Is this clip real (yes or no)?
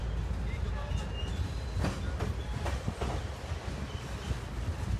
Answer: yes